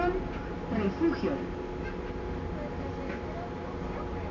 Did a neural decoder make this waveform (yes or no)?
no